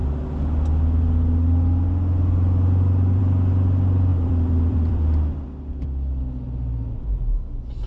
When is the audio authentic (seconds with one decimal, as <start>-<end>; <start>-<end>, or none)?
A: 0.0-4.1; 5.7-7.9